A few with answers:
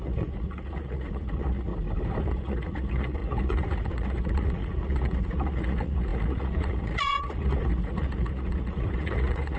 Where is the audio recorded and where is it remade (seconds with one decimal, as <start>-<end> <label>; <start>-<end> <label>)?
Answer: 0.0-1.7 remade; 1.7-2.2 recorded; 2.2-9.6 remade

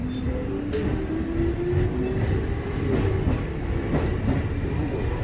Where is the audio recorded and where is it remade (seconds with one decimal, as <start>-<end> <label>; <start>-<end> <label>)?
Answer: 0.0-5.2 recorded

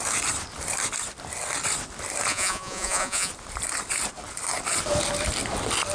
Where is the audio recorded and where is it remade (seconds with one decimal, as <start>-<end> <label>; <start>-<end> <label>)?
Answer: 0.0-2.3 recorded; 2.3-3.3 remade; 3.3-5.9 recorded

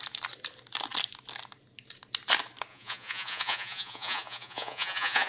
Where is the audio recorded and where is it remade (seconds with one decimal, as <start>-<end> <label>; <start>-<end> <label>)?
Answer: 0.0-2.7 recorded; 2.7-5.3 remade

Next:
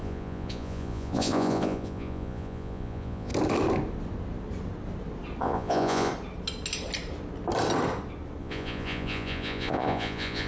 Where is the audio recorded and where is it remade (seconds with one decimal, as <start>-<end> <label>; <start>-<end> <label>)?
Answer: 0.0-3.3 remade; 3.3-5.4 recorded; 5.4-6.1 remade; 6.1-8.4 recorded; 8.4-10.5 remade

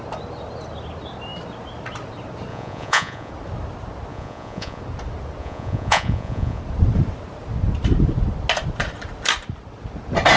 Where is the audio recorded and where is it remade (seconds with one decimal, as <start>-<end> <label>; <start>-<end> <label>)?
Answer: 0.0-2.5 recorded; 2.5-3.3 remade; 3.3-4.1 recorded; 4.1-4.8 remade; 4.8-5.4 recorded; 5.4-6.6 remade; 6.6-10.4 recorded

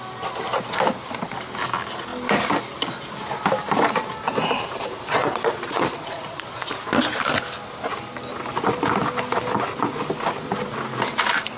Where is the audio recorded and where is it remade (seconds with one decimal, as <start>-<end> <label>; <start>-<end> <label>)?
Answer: 0.0-5.1 recorded; 5.1-6.7 remade; 6.7-11.6 recorded